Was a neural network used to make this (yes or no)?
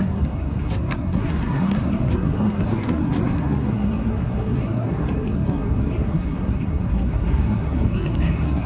yes